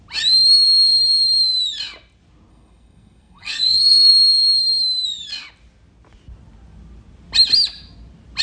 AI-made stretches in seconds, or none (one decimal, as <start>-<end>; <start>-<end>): 2.5-4.1